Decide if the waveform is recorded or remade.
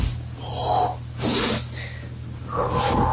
recorded